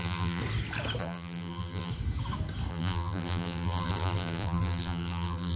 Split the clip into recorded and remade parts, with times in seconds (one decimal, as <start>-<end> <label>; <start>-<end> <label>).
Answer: 0.0-0.4 remade; 0.4-1.0 recorded; 1.0-1.9 remade; 1.9-2.7 recorded; 2.7-5.6 remade